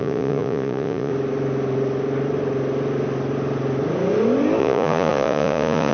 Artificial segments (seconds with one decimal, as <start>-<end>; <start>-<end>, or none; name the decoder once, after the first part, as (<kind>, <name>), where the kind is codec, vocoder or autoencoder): 0.0-1.1 (vocoder, Vocos); 4.6-5.9